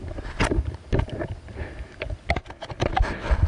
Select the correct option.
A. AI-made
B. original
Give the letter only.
B